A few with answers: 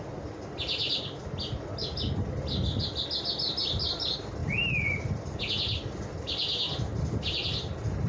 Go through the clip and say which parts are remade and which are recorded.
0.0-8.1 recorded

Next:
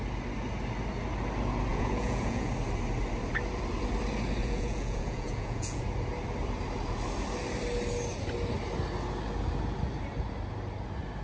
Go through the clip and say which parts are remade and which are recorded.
0.0-1.7 recorded; 1.7-2.5 remade; 2.5-4.4 recorded; 4.4-5.8 remade; 5.8-11.2 recorded

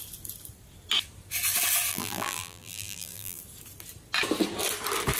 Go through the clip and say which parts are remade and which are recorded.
0.0-1.9 recorded; 1.9-3.4 remade; 3.4-5.2 recorded